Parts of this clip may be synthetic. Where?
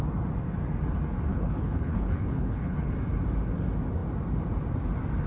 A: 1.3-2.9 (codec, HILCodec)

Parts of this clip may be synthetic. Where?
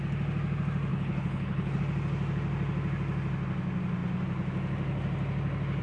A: 0.9-1.8 (codec, HILCodec)